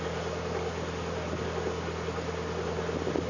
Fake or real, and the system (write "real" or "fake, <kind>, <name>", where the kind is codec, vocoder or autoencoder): real